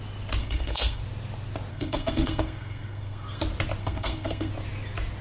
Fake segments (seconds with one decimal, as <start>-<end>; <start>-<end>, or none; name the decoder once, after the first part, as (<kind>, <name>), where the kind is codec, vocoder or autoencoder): 0.4-1.0 (codec, SNAC); 1.7-3.4; 3.8-4.5